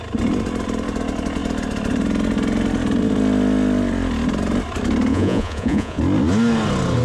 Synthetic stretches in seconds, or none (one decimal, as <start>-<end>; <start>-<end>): 5.1-6.0